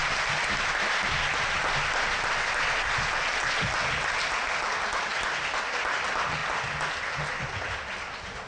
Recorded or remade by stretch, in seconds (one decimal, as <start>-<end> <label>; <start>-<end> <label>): 0.0-8.5 recorded

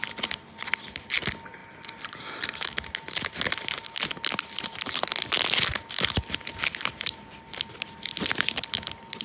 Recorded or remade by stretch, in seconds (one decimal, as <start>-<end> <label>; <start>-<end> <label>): 0.0-9.2 recorded

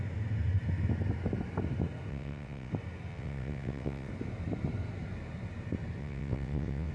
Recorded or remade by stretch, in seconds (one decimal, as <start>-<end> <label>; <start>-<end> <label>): 0.0-2.1 recorded; 2.1-2.7 remade; 2.7-3.1 recorded; 3.1-4.1 remade; 4.1-6.0 recorded; 6.0-6.9 remade